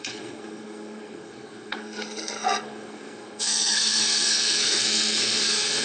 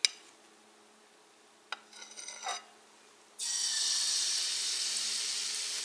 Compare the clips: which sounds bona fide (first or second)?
second